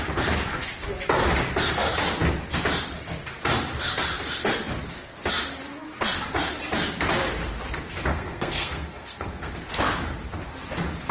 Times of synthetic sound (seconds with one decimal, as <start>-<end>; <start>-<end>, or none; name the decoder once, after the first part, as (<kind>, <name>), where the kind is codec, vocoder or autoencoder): 8.1-9.5 (codec, SNAC)